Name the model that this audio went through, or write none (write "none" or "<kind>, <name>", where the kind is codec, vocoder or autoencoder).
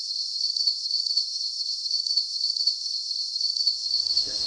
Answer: autoencoder, DAC-VAE